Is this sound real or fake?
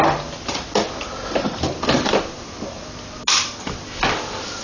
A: real